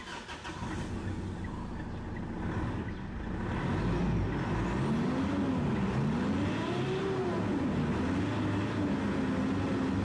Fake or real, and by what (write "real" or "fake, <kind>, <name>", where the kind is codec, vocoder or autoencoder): real